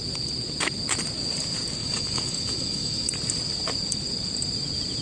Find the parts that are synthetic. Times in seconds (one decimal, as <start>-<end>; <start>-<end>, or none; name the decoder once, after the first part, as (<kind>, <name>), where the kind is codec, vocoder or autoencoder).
1.8-3.1 (autoencoder, DAC-VAE)